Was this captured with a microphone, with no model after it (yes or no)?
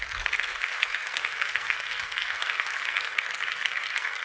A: no